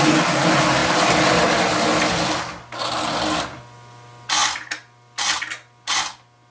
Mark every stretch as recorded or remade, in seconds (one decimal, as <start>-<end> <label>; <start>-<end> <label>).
0.0-6.5 recorded